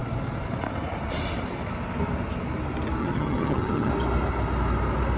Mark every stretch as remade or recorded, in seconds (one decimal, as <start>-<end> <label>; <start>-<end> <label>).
0.0-3.0 recorded; 3.0-3.9 remade; 3.9-5.2 recorded